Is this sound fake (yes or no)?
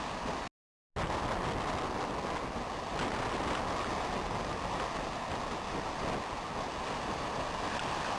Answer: no